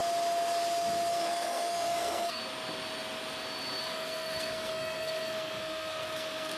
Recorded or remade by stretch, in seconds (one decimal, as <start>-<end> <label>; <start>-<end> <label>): 0.0-1.1 recorded; 1.1-2.4 remade; 2.4-3.8 recorded; 3.8-6.6 remade